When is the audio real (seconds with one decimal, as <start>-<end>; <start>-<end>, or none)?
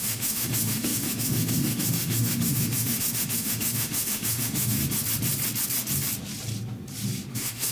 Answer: 4.8-7.3